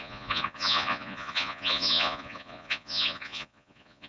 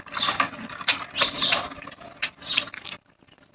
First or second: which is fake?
first